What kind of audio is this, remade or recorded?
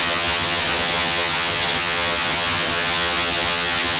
remade